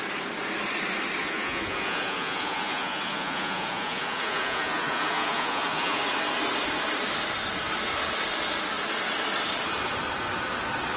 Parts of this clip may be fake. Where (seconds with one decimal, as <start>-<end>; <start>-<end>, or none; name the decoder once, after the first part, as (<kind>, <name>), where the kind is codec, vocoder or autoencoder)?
1.2-6.0 (vocoder, Vocos)